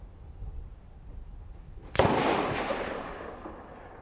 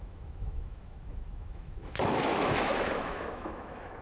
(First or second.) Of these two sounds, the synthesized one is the second